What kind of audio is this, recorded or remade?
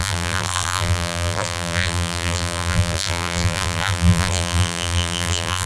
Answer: remade